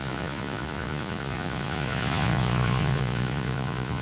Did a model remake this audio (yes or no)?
yes